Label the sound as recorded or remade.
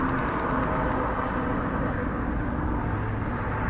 recorded